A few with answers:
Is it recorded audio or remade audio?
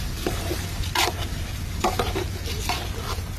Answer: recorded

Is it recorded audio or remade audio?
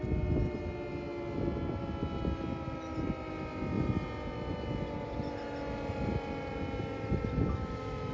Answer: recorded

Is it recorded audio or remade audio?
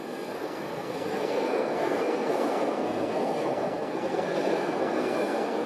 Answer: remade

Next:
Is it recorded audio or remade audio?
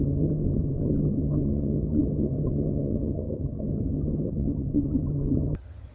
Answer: remade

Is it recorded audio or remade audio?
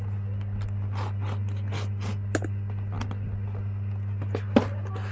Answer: recorded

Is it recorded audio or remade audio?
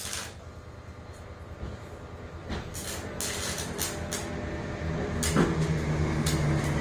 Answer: recorded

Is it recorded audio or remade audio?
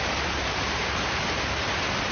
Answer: recorded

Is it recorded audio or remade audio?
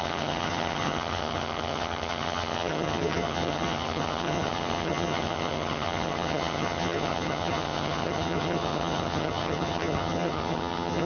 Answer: remade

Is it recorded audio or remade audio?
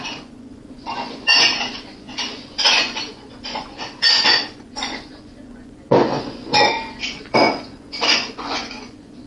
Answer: remade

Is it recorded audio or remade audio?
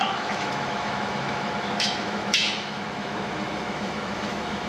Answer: remade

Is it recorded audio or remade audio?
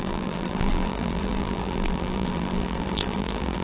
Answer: remade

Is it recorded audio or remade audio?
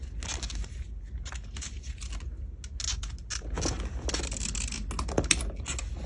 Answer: recorded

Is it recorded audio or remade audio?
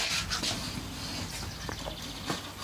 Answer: recorded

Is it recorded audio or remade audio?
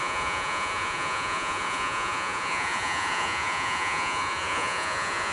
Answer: remade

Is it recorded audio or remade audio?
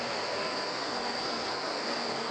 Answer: remade